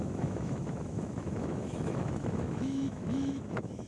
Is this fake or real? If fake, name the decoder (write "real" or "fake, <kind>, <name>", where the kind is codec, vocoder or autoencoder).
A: fake, autoencoder, DAC-VAE